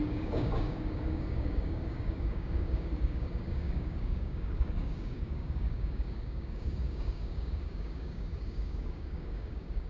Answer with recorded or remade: remade